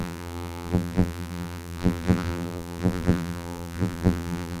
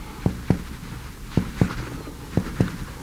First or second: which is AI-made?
first